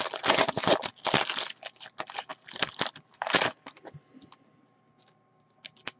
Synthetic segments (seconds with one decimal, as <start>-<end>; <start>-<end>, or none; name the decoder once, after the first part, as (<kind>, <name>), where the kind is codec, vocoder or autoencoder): 2.3-5.6 (vocoder, BigVGAN v2)